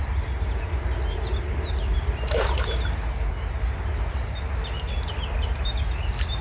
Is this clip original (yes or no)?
yes